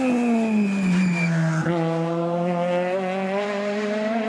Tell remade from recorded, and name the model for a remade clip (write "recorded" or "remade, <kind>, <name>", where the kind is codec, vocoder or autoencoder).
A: recorded